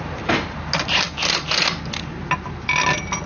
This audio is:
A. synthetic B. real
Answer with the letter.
B